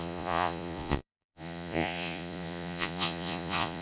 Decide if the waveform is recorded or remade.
remade